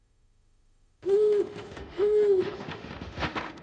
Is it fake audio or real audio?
fake